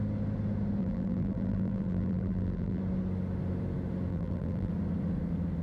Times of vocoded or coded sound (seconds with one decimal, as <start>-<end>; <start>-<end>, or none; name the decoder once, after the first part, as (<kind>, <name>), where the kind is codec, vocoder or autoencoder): 0.8-2.8 (vocoder, BigVGAN v2); 4.1-4.7